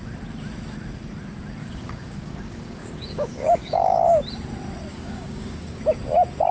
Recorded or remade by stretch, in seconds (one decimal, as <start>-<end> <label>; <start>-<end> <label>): 0.0-1.6 recorded; 1.6-4.2 remade; 4.2-4.9 recorded; 4.9-5.8 remade; 5.8-6.5 recorded